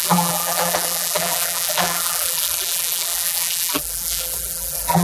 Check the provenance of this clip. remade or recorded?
remade